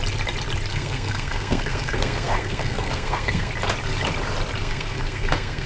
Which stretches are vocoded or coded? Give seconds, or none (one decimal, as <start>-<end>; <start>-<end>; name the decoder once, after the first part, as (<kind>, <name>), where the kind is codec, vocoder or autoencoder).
0.7-3.5 (codec, SNAC); 4.6-5.7